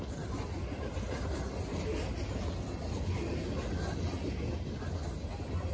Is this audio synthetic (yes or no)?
no